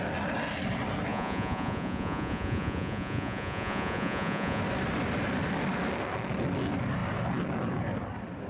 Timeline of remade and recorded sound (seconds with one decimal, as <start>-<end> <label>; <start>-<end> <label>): 0.0-1.1 recorded; 1.1-4.6 remade; 4.6-8.5 recorded